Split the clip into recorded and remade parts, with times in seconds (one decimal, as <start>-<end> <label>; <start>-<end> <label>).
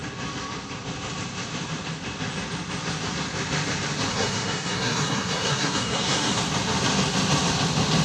0.0-4.1 recorded; 4.1-6.4 remade; 6.4-8.0 recorded